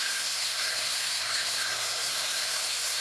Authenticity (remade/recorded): remade